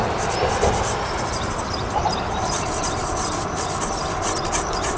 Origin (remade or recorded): remade